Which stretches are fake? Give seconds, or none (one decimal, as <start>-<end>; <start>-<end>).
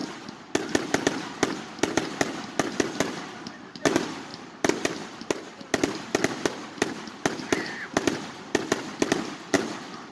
4.3-5.2